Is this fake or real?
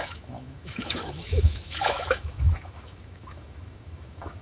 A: fake